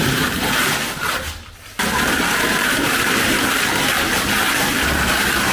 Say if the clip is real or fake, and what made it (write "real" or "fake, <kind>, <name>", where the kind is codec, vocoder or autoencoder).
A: fake, vocoder, BigVGAN v2